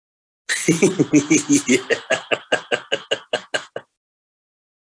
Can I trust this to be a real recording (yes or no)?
yes